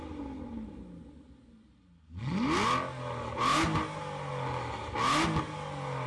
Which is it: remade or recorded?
recorded